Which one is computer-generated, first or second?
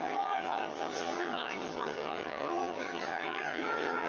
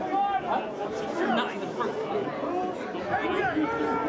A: first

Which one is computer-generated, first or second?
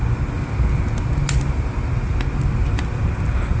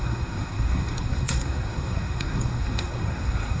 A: second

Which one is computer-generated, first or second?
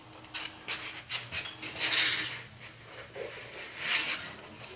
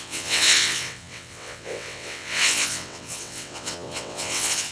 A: second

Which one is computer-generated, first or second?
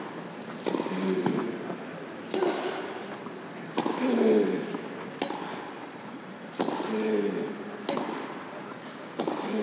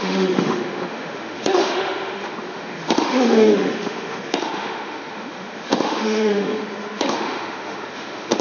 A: second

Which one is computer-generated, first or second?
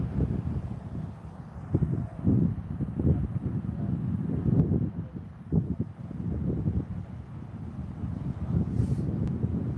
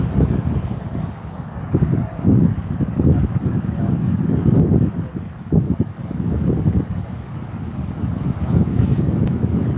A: second